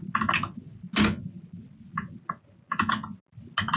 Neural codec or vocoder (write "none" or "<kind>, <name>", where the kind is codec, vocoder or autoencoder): none